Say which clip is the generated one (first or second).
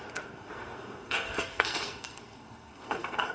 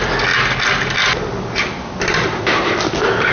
first